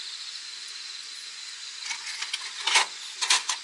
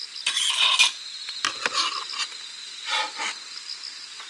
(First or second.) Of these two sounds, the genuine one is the second